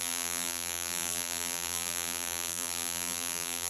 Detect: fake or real fake